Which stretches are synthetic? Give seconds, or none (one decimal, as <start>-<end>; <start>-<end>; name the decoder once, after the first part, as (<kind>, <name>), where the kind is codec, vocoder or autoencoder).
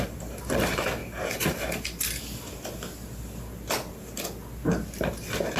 none